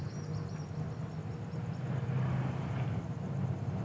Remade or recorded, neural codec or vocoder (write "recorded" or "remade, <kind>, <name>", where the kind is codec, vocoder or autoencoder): recorded